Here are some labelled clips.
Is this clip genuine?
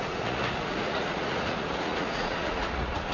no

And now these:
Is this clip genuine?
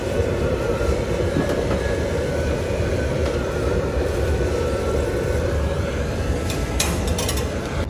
no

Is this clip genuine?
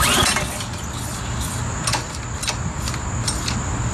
yes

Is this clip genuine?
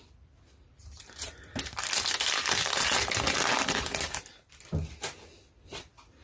yes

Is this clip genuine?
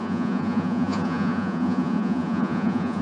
no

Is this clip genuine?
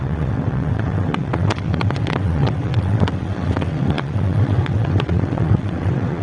no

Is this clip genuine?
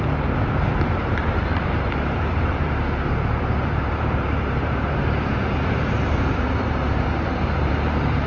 no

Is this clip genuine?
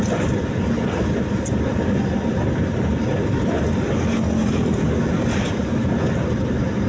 yes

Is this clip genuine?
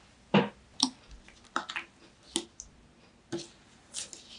yes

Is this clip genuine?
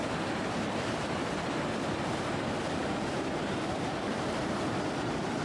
no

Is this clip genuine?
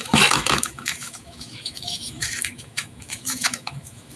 no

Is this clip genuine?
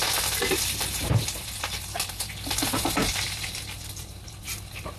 no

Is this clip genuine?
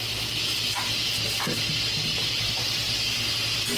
yes